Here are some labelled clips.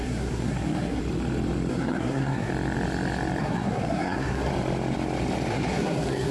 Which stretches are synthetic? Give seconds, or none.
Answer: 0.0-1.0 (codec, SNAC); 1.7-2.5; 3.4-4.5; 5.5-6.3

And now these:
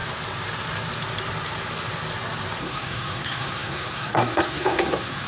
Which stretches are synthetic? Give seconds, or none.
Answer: 2.6-5.3 (codec, SNAC)

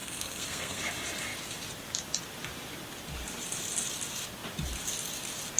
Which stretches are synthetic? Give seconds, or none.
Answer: 0.0-0.8 (codec, SNAC)

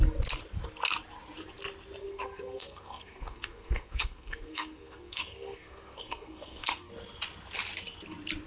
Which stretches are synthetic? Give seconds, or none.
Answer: 2.0-6.9 (codec, SNAC)

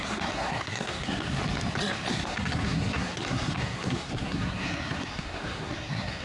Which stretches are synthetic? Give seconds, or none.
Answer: 0.0-1.4 (codec, SNAC); 2.1-6.2

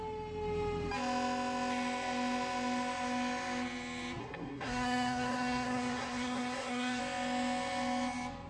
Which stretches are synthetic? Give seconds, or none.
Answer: 4.2-7.0 (codec, SNAC)

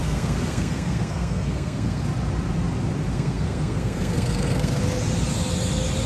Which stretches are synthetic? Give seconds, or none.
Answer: 0.0-2.0 (codec, SNAC); 3.1-4.8